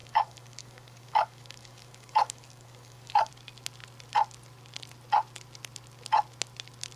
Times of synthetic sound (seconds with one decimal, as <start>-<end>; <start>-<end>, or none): 0.0-3.3